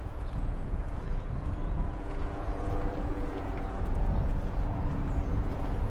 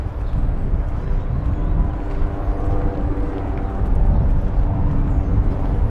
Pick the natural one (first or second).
second